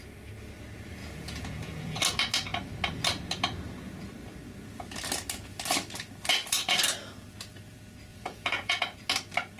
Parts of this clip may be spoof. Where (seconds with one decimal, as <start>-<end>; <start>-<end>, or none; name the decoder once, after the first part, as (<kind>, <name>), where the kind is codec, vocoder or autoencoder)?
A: 1.0-2.0 (vocoder, Vocos); 8.1-8.8